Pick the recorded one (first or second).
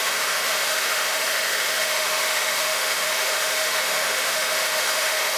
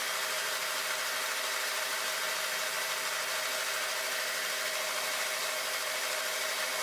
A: second